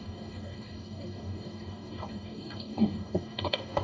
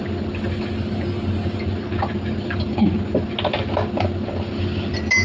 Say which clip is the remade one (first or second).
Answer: first